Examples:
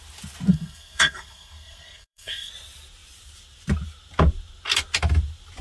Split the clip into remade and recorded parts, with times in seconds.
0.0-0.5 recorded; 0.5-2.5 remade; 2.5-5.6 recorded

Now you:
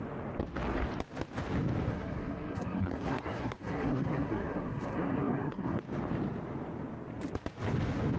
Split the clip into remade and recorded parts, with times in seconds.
0.0-1.9 recorded; 1.9-5.8 remade; 5.8-8.2 recorded

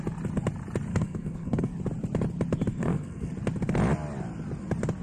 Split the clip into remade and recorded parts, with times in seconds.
0.0-0.9 recorded; 0.9-1.7 remade; 1.7-2.7 recorded; 2.7-3.3 remade; 3.3-5.0 recorded

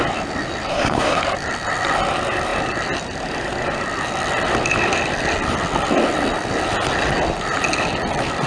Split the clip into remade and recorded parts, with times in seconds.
0.0-0.7 recorded; 0.7-1.2 remade; 1.2-8.5 recorded

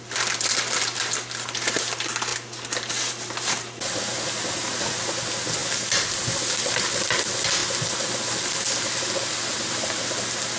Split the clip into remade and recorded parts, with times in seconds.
0.0-10.6 recorded

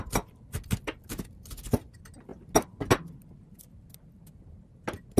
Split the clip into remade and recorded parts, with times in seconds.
0.0-5.2 recorded